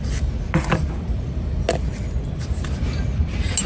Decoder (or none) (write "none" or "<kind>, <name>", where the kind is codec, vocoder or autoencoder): none